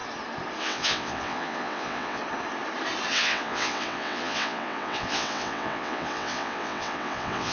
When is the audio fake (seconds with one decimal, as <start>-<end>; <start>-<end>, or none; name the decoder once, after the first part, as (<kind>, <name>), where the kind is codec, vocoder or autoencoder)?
0.6-2.2 (vocoder, WaveNeXt); 3.1-7.5